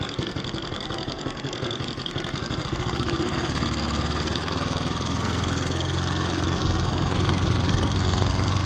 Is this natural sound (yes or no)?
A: no